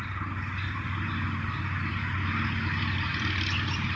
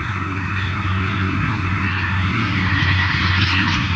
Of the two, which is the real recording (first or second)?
first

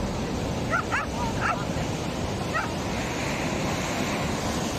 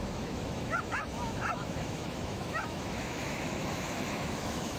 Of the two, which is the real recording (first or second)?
first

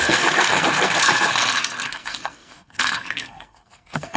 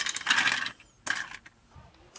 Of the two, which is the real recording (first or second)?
second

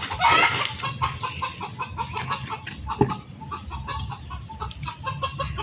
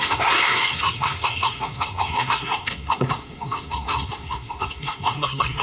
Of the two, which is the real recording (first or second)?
first